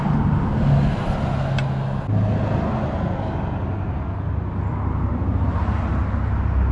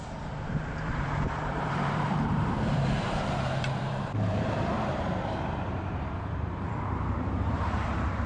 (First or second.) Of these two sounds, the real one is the first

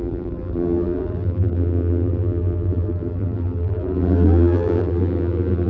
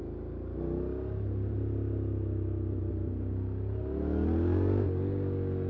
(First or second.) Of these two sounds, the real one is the second